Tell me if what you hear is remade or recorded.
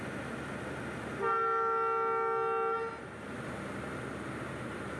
recorded